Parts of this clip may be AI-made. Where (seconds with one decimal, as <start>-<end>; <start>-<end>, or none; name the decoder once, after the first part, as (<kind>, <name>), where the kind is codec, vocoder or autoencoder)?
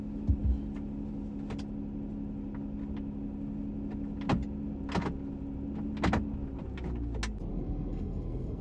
7.5-8.6 (codec, SNAC)